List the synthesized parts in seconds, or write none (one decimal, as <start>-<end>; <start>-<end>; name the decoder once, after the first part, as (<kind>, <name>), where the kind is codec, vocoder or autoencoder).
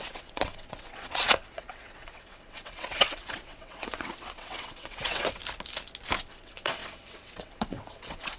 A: 0.0-5.4 (vocoder, WaveNeXt); 6.2-8.4